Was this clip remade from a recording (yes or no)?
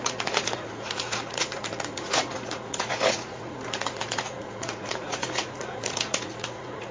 yes